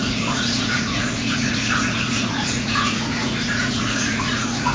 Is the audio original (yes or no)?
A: no